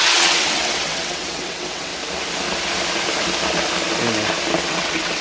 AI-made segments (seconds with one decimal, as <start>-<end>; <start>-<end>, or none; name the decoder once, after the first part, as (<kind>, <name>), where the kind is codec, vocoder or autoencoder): 0.0-1.9 (vocoder, WaveNeXt); 4.7-5.2